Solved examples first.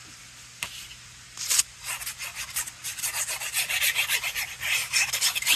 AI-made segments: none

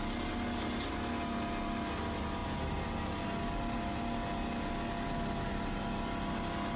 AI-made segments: none